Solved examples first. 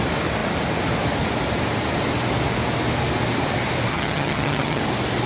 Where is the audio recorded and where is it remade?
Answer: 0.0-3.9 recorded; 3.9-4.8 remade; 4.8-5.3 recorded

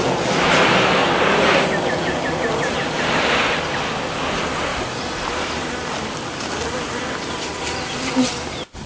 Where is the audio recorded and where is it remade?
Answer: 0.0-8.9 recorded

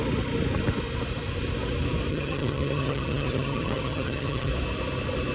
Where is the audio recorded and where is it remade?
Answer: 0.0-2.1 recorded; 2.1-4.5 remade; 4.5-5.3 recorded

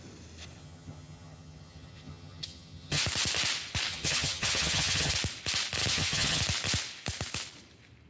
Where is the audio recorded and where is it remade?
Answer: 0.0-0.6 recorded; 0.6-3.0 remade; 3.0-3.9 recorded; 3.9-5.1 remade; 5.1-5.9 recorded; 5.9-6.4 remade; 6.4-8.1 recorded